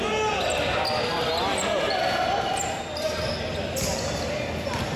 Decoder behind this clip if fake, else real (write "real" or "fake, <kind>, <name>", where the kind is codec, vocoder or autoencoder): real